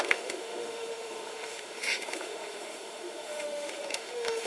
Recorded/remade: remade